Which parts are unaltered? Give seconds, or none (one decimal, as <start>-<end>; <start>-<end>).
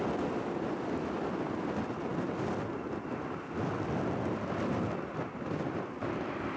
0.0-6.6